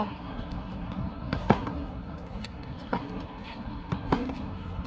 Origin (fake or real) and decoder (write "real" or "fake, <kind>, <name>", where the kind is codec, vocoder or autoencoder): fake, codec, SNAC